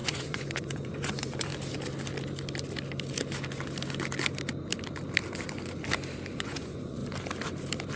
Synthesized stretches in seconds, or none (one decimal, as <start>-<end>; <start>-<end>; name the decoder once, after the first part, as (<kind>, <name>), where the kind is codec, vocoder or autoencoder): 0.0-1.5 (vocoder, Vocos); 6.3-7.0